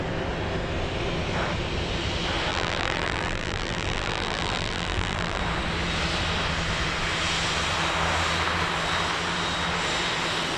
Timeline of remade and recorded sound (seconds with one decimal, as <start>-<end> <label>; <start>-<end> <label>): 0.0-2.5 recorded; 2.5-5.4 remade; 5.4-10.6 recorded